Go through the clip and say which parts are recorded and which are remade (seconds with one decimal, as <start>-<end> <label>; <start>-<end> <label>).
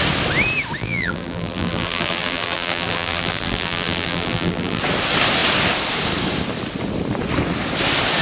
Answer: 0.0-0.8 recorded; 0.8-4.8 remade; 4.8-8.2 recorded